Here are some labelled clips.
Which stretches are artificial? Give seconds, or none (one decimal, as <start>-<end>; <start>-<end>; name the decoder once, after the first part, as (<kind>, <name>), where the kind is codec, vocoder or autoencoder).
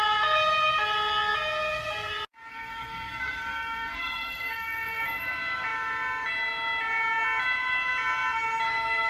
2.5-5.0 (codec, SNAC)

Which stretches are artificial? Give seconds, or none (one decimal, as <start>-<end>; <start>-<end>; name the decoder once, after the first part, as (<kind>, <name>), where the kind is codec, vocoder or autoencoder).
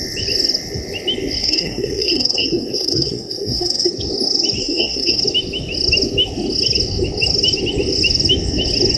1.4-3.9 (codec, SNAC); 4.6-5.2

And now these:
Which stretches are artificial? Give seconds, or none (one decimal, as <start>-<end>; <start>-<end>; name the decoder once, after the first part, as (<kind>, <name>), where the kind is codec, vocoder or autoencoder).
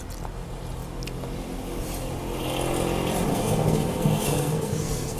3.3-5.2 (codec, SNAC)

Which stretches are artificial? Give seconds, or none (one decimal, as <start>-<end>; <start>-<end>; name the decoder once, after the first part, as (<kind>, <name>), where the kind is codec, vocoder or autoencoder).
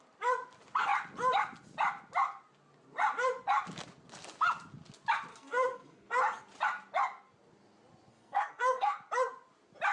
5.3-6.2 (codec, SNAC); 8.1-9.0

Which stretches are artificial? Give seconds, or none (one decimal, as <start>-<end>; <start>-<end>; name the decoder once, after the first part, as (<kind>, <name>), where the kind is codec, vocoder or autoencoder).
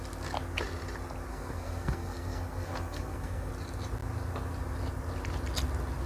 1.3-3.5 (codec, SNAC)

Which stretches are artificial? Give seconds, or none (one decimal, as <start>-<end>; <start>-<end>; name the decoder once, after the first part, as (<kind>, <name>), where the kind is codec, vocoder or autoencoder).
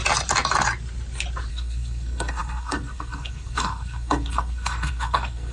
1.5-5.5 (codec, SNAC)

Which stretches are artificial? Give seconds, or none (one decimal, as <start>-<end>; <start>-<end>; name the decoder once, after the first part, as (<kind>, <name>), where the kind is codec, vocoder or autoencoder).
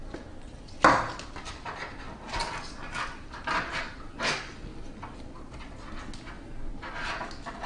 none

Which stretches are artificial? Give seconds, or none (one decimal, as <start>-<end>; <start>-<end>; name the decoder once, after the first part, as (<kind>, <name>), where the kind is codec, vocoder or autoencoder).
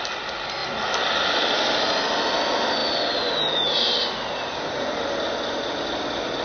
none